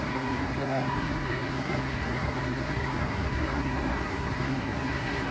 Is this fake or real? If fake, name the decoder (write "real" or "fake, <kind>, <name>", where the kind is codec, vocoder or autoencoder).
fake, codec, SNAC